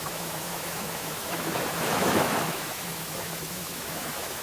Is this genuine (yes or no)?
no